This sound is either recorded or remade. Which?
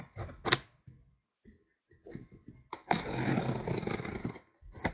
recorded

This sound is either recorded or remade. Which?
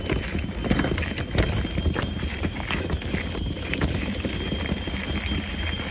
recorded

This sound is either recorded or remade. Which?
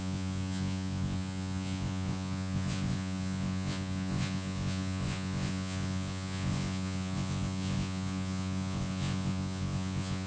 remade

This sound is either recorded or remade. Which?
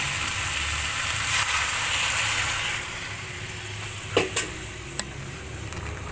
recorded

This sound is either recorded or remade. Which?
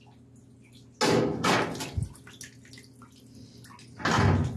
recorded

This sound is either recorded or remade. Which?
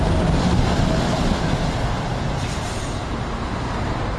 recorded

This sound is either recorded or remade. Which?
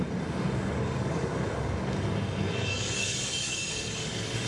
remade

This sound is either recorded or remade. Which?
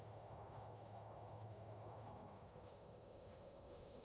remade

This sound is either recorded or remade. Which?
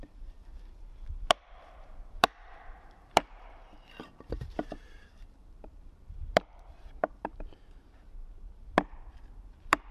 remade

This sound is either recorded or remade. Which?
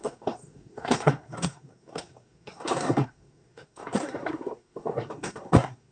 remade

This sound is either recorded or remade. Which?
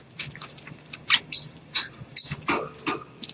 recorded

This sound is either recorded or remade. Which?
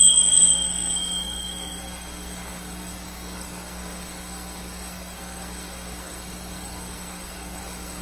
remade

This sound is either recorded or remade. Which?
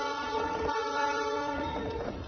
remade